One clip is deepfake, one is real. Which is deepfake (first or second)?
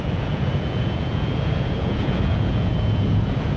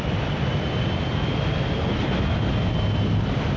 first